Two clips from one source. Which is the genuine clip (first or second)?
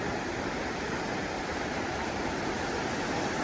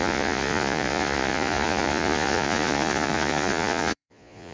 first